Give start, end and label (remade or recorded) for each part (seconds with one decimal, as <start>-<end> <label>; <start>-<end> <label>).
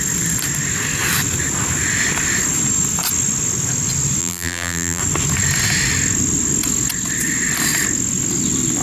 0.0-4.2 recorded; 4.2-5.0 remade; 5.0-8.8 recorded